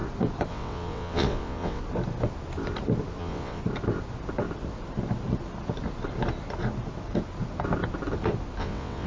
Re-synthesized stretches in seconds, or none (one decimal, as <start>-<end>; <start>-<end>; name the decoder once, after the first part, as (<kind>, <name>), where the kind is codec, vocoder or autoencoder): 0.5-1.8 (vocoder, WaveNeXt); 3.2-3.6; 8.6-9.1